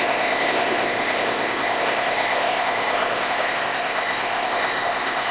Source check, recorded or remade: remade